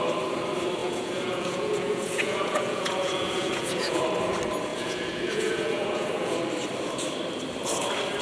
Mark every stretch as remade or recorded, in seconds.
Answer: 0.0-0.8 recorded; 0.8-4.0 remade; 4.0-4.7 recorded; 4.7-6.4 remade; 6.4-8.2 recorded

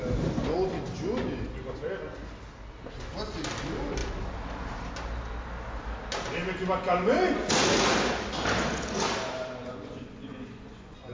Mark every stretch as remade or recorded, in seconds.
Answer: 0.0-9.6 recorded; 9.6-11.1 remade

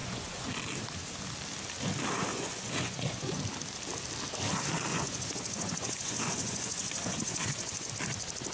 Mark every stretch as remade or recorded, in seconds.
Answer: 0.0-0.5 remade; 0.5-2.3 recorded; 2.3-3.4 remade; 3.4-4.9 recorded; 4.9-7.9 remade; 7.9-8.5 recorded

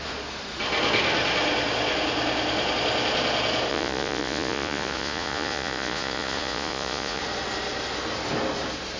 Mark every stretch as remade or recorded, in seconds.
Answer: 0.0-3.7 recorded; 3.7-7.2 remade; 7.2-9.0 recorded

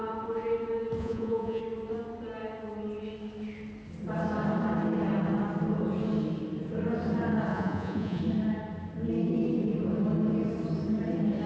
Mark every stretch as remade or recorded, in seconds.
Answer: 0.0-1.0 recorded; 1.0-1.6 remade; 1.6-7.5 recorded; 7.5-8.2 remade; 8.2-11.5 recorded

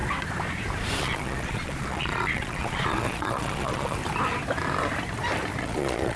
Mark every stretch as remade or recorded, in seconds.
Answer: 0.0-1.0 recorded; 1.0-4.0 remade; 4.0-5.6 recorded; 5.6-6.2 remade

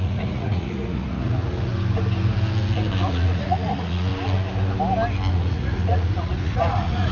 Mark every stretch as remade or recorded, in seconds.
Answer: 0.0-1.7 remade; 1.7-3.1 recorded; 3.1-4.1 remade; 4.1-5.3 recorded; 5.3-7.1 remade

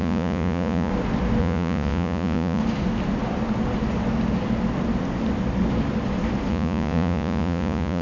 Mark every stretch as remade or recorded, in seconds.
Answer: 0.0-0.9 remade; 0.9-1.4 recorded; 1.4-2.6 remade; 2.6-6.5 recorded; 6.5-8.0 remade